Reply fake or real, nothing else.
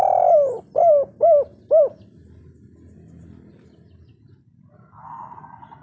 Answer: real